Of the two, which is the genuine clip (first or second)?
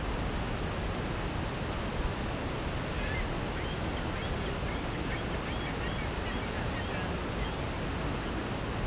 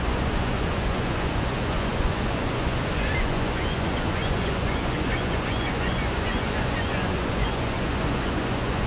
first